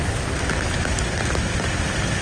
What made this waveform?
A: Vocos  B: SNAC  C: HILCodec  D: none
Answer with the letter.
D